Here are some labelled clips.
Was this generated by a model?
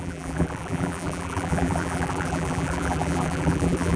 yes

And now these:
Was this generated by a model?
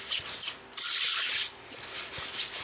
no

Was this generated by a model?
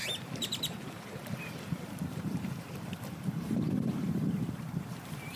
yes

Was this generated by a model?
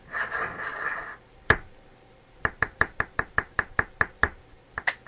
yes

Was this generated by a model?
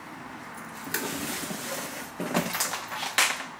no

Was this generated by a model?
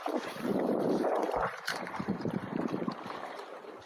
yes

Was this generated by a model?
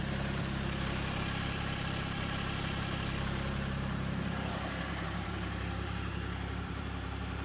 yes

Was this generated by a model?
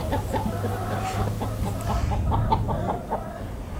no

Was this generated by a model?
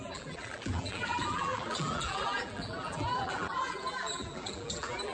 yes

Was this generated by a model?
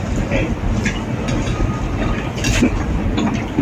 no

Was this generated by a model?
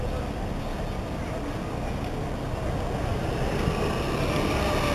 no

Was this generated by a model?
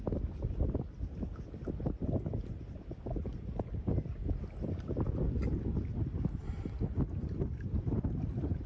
no